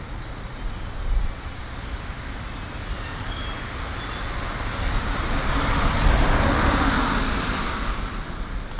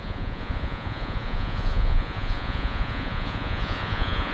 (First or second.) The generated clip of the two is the second